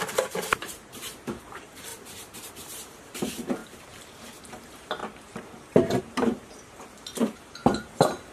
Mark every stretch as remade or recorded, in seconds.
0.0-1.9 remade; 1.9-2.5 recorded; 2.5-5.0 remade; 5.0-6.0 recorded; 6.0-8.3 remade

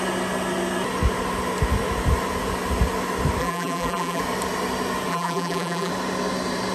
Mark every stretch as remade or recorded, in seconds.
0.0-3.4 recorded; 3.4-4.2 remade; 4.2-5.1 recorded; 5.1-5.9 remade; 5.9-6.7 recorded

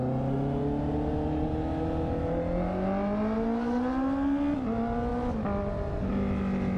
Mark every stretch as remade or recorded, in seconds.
0.0-6.8 recorded

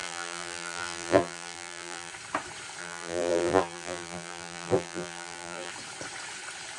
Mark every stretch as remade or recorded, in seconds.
0.0-2.1 remade; 2.1-2.8 recorded; 2.8-5.7 remade; 5.7-6.8 recorded